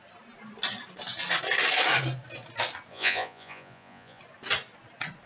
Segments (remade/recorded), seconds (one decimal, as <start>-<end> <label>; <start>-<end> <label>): 0.0-2.9 recorded; 2.9-4.2 remade; 4.2-5.3 recorded